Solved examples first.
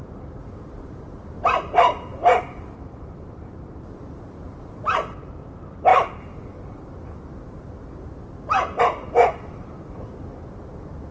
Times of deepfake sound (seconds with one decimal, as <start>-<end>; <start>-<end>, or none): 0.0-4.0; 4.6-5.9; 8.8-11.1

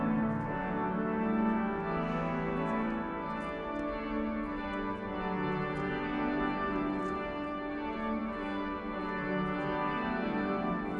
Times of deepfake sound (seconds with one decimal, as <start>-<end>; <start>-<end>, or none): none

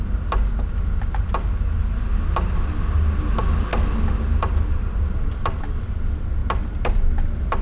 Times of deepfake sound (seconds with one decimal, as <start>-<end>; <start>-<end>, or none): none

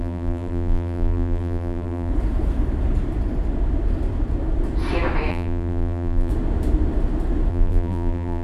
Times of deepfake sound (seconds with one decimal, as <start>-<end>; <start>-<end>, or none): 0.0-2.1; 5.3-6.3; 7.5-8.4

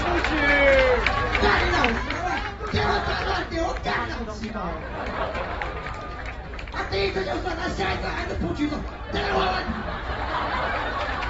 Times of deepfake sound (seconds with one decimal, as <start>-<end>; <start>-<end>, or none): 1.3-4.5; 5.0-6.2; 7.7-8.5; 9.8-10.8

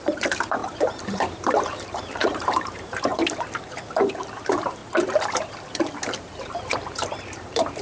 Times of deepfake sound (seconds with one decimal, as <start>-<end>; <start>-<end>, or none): 0.0-4.8; 5.4-7.8